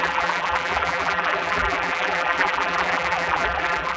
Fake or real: fake